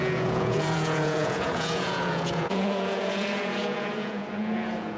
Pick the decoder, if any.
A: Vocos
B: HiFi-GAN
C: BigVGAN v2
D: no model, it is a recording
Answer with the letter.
A